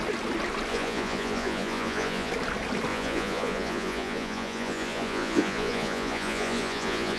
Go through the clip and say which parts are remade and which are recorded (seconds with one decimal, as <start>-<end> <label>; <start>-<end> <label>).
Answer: 0.0-0.7 recorded; 0.7-2.3 remade; 2.3-2.9 recorded; 2.9-7.2 remade